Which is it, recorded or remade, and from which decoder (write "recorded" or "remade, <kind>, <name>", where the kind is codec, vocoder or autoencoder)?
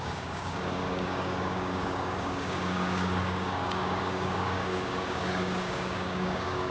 remade, codec, DAC